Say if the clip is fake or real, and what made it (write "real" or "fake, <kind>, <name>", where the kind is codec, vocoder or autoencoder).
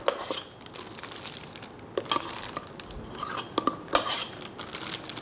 real